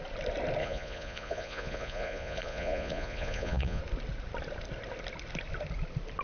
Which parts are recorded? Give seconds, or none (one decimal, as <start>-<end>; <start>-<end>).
0.0-0.6; 3.8-6.2